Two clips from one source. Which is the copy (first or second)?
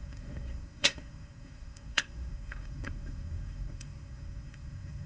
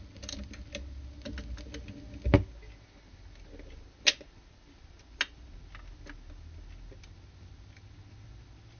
first